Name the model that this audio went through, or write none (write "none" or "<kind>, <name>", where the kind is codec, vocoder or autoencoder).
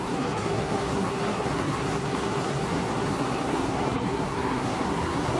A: codec, SNAC